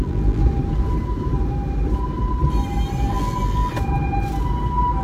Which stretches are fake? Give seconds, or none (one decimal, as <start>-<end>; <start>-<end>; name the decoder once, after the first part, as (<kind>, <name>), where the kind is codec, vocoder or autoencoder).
0.0-0.4 (vocoder, BigVGAN v2); 3.1-3.7